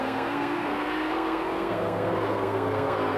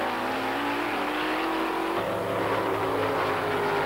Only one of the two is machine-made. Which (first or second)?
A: first